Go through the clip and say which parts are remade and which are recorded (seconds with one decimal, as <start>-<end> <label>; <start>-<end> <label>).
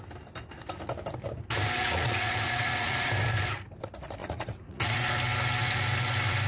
0.0-1.8 recorded; 1.8-3.1 remade; 3.1-4.2 recorded; 4.2-5.0 remade; 5.0-6.5 recorded